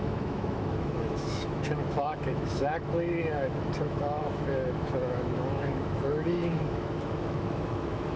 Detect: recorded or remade remade